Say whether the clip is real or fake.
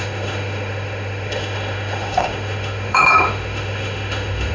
fake